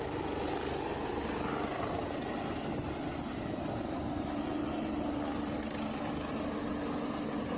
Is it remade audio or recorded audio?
recorded